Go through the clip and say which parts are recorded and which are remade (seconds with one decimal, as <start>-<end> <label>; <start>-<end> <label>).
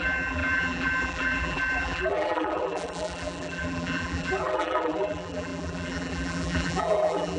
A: 0.0-7.4 remade